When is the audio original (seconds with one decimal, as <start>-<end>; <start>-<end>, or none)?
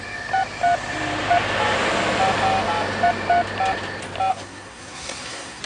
0.0-4.3